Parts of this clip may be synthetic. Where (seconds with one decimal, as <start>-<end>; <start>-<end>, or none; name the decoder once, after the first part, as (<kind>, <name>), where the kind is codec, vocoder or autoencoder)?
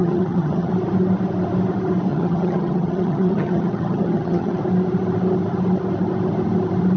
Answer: 0.0-0.7 (vocoder, HiFi-GAN); 2.1-4.6